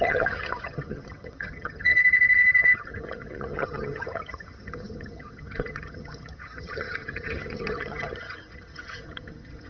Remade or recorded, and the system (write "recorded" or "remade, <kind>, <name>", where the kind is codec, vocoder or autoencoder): remade, vocoder, HiFi-GAN